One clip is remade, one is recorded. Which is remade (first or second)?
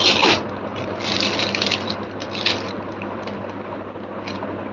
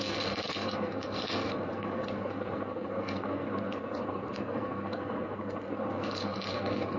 second